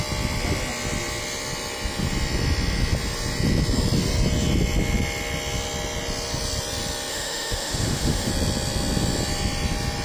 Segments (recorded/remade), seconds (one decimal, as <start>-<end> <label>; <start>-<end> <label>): 0.0-7.1 recorded; 7.1-8.3 remade; 8.3-10.0 recorded